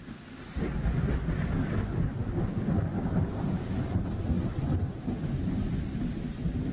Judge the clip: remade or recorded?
recorded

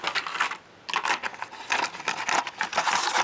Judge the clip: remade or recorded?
recorded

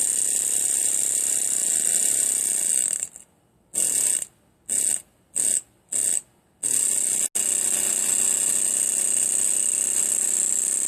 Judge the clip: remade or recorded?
recorded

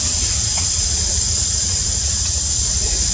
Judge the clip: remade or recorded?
remade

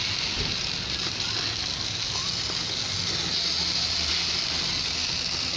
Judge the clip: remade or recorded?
recorded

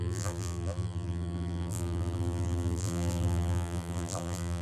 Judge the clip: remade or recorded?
remade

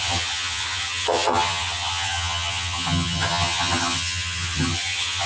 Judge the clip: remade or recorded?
remade